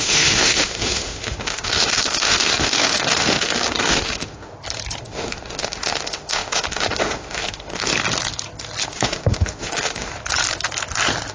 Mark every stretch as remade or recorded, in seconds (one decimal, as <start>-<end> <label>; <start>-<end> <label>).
0.0-4.5 remade; 4.5-5.0 recorded; 5.0-7.9 remade; 7.9-8.9 recorded; 8.9-10.1 remade; 10.1-11.3 recorded